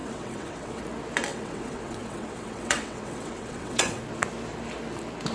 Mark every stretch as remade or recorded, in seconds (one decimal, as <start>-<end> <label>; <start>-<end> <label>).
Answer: 0.0-0.8 remade; 0.8-1.3 recorded; 1.3-4.0 remade; 4.0-5.3 recorded